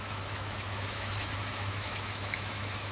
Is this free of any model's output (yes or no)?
no